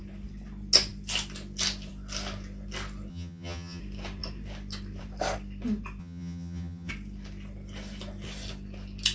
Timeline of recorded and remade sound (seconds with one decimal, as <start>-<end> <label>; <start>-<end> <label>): 0.0-3.1 recorded; 3.1-3.8 remade; 3.8-6.0 recorded; 6.0-6.9 remade; 6.9-9.1 recorded